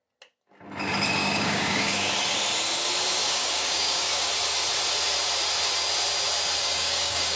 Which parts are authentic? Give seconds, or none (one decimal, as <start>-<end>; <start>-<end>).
0.0-1.2; 2.1-3.2; 4.3-6.6